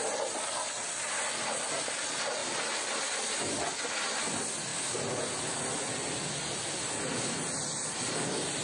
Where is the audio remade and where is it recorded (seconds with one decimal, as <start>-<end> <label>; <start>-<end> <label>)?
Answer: 0.0-8.6 recorded